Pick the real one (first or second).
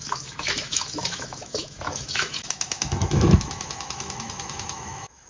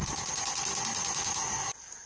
second